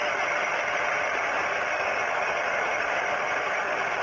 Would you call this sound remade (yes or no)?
no